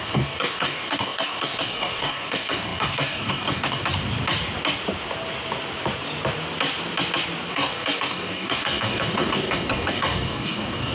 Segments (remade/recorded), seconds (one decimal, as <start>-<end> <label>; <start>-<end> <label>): 0.0-3.8 remade; 3.8-7.5 recorded; 7.5-10.9 remade